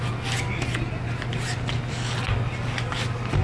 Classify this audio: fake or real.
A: real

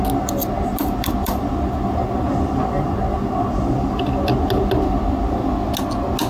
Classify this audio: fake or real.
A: real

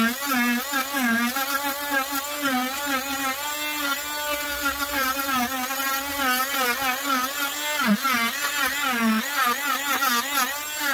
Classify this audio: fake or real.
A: real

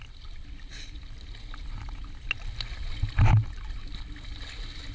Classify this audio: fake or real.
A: real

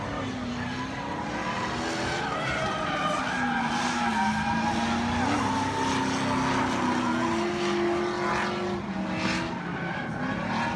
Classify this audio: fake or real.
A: real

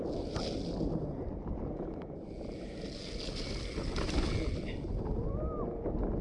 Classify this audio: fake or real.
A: real